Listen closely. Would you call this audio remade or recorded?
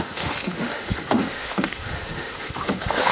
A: remade